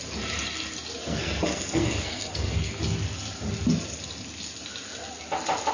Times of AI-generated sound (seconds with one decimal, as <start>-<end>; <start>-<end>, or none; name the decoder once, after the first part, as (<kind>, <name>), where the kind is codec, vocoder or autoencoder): 1.0-2.7 (codec, SNAC)

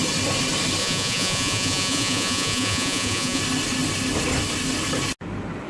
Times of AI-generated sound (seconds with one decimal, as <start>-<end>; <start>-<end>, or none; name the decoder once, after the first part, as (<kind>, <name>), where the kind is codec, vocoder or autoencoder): 0.8-3.4 (vocoder, Vocos)

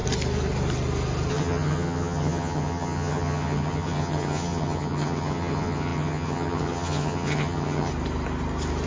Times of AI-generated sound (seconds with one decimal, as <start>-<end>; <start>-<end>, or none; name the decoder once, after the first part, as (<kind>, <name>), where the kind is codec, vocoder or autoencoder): 1.3-7.9 (vocoder, HiFi-GAN)

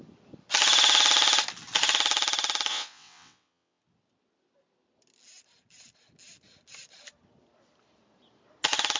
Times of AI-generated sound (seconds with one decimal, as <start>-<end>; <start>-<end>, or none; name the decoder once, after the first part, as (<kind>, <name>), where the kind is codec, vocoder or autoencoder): 2.7-3.8 (vocoder, WaveNeXt)

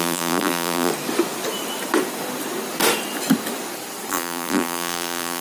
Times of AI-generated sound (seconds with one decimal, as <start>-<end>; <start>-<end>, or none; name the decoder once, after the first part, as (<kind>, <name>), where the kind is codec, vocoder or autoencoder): 0.0-0.9 (vocoder, BigVGAN v2); 4.1-5.4

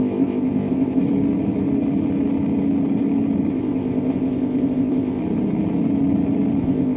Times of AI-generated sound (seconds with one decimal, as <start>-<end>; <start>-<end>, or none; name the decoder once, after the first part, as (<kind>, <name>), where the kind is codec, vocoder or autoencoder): 0.0-1.0 (codec, ZipCodec); 3.5-5.2; 6.6-7.0

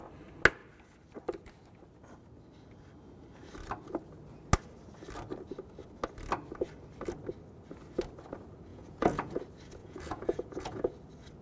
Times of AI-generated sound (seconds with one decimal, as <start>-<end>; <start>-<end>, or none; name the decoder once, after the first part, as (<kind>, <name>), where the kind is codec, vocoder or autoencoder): 8.7-9.4 (vocoder, Vocos); 9.8-10.9